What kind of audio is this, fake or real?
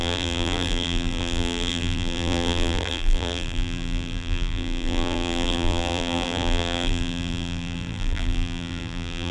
fake